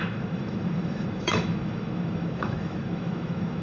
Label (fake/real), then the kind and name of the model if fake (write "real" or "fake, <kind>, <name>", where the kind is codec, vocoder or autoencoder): fake, autoencoder, DAC-VAE